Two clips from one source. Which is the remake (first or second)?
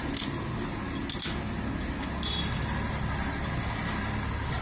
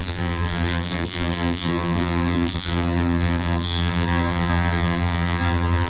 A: second